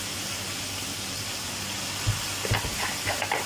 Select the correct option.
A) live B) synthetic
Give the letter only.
A